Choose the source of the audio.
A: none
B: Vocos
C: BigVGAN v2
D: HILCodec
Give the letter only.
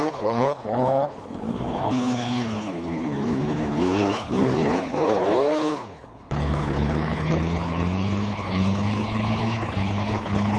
D